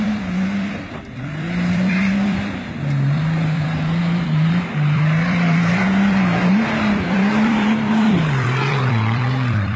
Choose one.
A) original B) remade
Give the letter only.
B